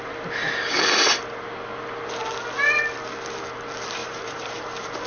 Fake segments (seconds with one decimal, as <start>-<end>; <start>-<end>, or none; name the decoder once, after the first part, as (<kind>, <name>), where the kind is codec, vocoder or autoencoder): 4.0-5.1 (vocoder, BigVGAN v2)